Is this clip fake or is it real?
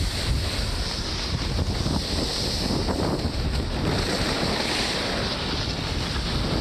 real